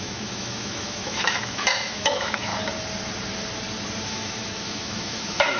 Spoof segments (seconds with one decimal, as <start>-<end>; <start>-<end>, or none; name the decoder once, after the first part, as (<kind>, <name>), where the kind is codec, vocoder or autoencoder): 0.0-2.5 (autoencoder, DAC-VAE); 4.1-5.6

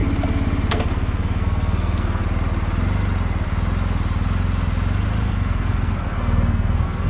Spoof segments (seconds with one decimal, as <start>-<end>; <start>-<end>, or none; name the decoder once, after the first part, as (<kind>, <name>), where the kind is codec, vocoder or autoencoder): 0.7-2.2 (codec, SNAC); 5.3-7.1

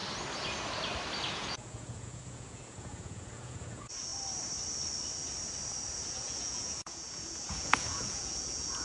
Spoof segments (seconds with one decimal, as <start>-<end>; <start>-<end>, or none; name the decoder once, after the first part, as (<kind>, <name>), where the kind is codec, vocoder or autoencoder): 1.3-4.1 (vocoder, Vocos); 6.1-8.8